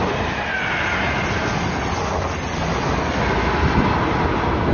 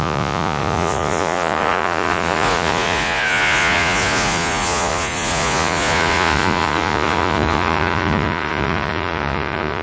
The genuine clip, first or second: first